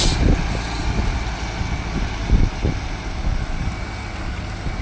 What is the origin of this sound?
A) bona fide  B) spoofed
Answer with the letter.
A